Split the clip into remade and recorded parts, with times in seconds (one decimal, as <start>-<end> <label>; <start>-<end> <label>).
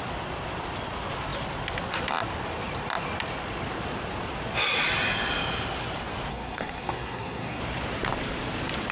0.0-6.3 recorded; 6.3-7.6 remade; 7.6-8.9 recorded